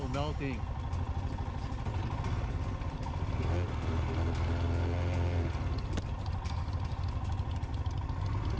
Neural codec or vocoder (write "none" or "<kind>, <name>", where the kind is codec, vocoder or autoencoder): none